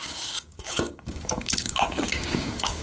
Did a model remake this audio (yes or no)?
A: yes